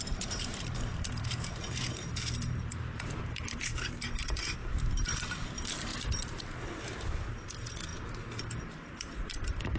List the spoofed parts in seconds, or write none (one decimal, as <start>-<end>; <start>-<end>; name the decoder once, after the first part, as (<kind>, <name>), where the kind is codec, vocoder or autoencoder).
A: 0.0-4.6 (vocoder, BigVGAN v2); 5.2-7.9; 8.6-9.8